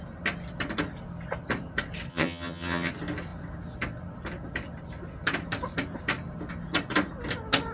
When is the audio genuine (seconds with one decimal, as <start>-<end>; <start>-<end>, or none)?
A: 0.0-2.1; 2.9-7.7